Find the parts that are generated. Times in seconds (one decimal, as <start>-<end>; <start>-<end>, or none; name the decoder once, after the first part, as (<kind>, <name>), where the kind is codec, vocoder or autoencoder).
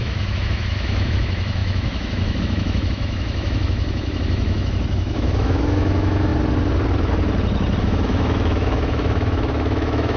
0.0-6.3 (autoencoder, DAC-VAE); 7.8-10.2